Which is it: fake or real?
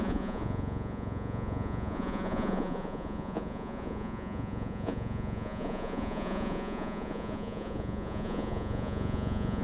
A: fake